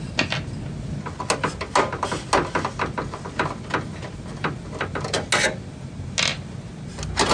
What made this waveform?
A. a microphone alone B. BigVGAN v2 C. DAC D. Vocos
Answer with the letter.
A